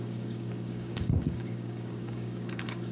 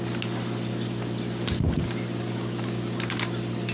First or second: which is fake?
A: first